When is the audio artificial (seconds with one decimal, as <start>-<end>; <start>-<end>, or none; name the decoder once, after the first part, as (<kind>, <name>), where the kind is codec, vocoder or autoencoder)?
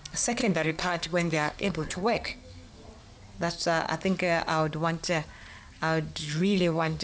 0.4-2.9 (codec, SNAC); 6.2-7.0